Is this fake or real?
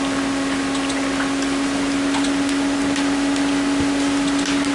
real